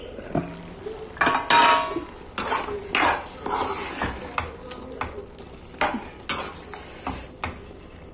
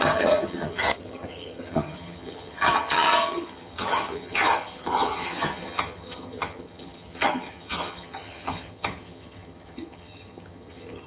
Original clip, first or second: first